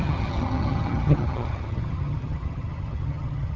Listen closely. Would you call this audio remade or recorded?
remade